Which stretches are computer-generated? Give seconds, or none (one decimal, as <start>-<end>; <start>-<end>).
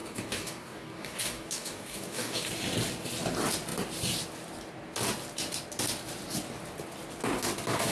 0.0-2.5